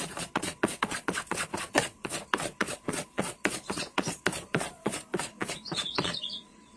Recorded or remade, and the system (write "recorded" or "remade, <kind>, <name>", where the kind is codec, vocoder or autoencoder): remade, vocoder, Vocos